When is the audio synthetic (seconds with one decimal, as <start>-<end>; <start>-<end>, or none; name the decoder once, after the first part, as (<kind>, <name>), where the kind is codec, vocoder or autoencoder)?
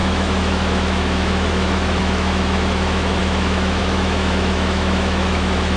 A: 0.0-5.8 (autoencoder, DAC-VAE)